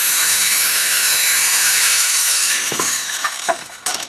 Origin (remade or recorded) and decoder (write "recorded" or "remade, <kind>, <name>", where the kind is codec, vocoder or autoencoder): remade, autoencoder, DAC-VAE